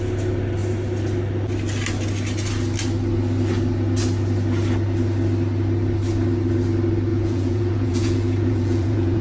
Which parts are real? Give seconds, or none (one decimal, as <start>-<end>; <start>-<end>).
0.0-7.1